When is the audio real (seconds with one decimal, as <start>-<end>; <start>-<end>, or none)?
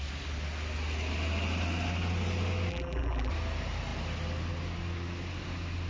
0.0-2.7; 3.3-5.9